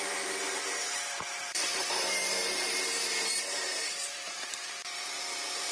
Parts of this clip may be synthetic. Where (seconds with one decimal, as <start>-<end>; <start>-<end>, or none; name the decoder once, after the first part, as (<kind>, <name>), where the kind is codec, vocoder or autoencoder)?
0.0-5.7 (vocoder, BigVGAN v2)